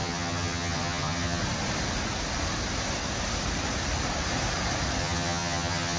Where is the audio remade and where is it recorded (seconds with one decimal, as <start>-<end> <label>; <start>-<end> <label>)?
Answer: 0.0-1.4 remade; 1.4-5.0 recorded; 5.0-6.0 remade